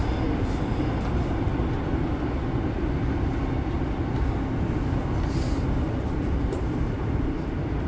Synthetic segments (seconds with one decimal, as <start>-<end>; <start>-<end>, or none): 0.8-1.5; 5.5-7.9